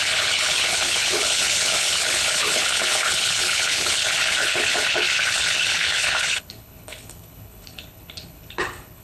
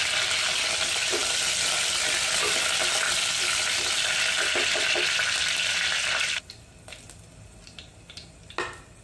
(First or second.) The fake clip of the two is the first